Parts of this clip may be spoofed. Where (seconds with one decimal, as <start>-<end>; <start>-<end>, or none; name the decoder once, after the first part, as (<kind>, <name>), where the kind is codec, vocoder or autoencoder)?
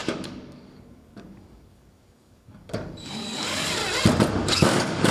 0.0-3.8 (codec, DAC); 4.3-5.1